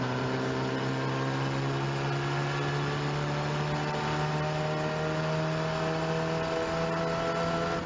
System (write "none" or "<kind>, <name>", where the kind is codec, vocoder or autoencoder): none